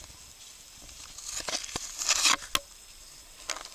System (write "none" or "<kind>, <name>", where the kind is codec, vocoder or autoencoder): none